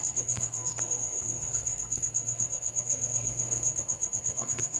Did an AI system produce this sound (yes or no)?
yes